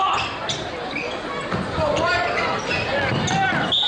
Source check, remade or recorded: recorded